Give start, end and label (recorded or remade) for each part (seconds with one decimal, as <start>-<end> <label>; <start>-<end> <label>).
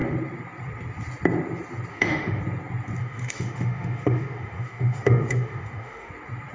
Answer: 0.0-1.9 recorded; 1.9-2.4 remade; 2.4-3.0 recorded; 3.0-6.1 remade; 6.1-6.5 recorded